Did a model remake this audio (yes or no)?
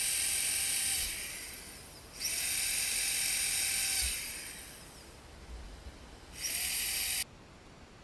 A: no